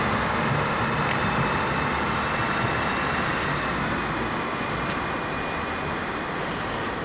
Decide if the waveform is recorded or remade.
recorded